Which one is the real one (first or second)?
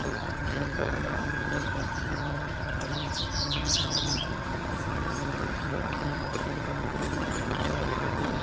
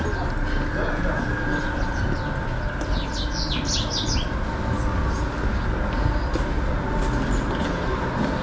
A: second